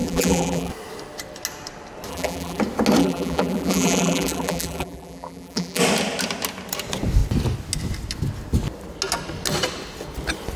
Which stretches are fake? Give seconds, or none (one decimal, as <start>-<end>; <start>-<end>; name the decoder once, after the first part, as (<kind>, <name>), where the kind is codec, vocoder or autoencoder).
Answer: 0.0-0.7 (vocoder, BigVGAN v2); 2.1-2.6; 3.0-5.8